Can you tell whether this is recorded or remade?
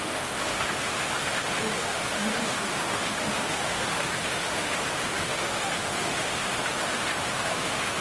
remade